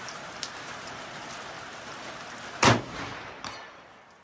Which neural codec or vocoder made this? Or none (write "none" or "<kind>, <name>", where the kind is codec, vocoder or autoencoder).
none